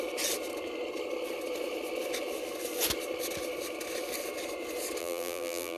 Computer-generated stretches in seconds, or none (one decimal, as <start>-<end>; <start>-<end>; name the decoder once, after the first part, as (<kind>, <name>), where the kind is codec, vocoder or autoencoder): 5.0-5.8 (vocoder, BigVGAN v2)